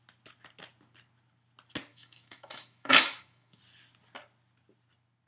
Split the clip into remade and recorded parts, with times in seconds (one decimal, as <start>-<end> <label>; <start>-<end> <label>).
0.0-1.9 recorded; 1.9-3.6 remade; 3.6-5.3 recorded